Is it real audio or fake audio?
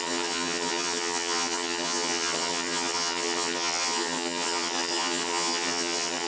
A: fake